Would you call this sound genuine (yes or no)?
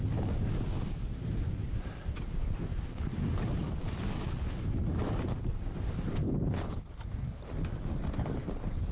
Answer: yes